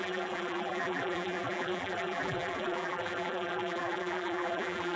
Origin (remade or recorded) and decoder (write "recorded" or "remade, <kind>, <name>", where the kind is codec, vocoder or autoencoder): remade, vocoder, BigVGAN v2